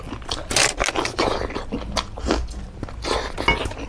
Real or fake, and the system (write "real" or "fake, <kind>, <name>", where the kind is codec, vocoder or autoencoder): real